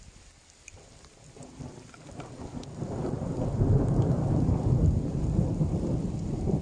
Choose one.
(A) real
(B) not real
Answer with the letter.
A